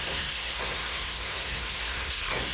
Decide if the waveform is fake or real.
fake